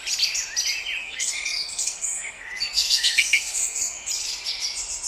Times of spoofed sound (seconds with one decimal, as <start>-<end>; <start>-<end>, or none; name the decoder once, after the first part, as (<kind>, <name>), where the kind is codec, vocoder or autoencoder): 1.0-4.1 (codec, SNAC)